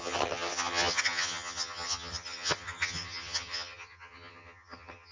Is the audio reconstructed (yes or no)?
yes